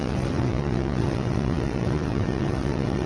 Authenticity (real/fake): fake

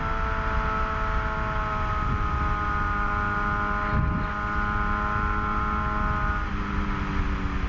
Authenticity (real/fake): real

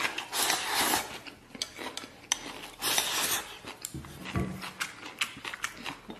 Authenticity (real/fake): real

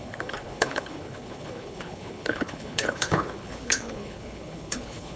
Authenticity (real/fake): fake